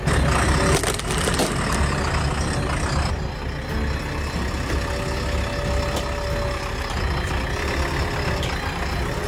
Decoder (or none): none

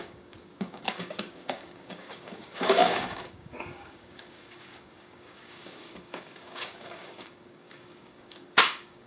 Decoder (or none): codec, DAC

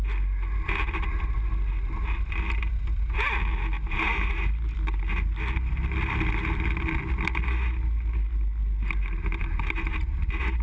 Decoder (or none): none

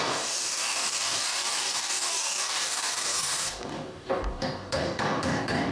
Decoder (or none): codec, DAC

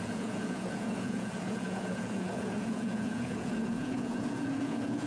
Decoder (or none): vocoder, Vocos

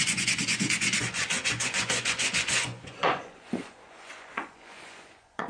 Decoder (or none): vocoder, Vocos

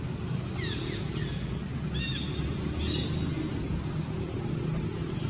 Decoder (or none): none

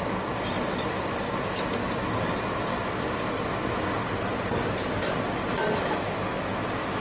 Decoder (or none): none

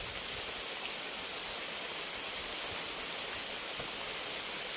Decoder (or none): none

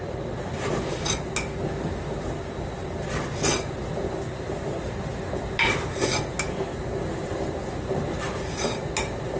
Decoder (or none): none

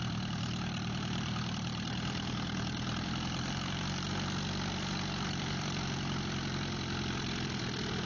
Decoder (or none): vocoder, BigVGAN v2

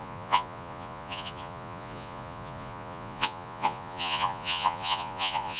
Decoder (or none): vocoder, Vocos